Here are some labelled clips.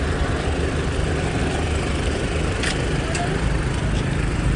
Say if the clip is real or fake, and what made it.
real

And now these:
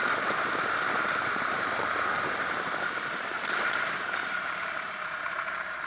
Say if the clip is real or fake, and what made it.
fake, vocoder, BigVGAN v2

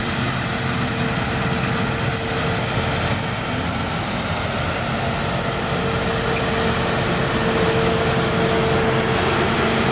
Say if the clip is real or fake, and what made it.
real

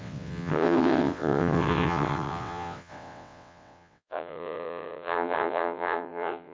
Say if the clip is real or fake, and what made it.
fake, vocoder, WaveNeXt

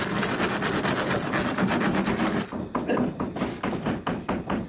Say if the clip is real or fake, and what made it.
real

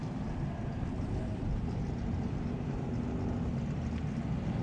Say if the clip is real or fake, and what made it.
real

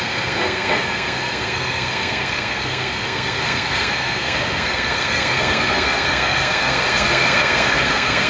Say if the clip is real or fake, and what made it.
fake, codec, SNAC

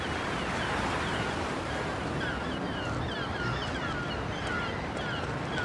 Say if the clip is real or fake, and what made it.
real